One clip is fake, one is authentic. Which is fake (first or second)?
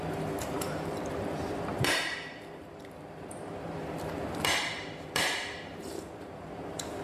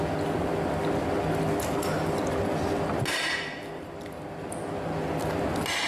first